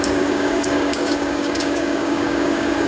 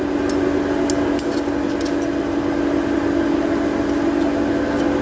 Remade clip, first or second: first